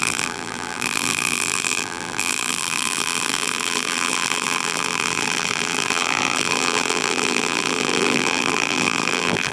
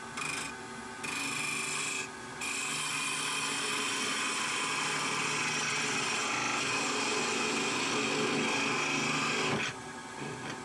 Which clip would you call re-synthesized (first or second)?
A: first